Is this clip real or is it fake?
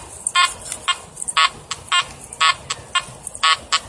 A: real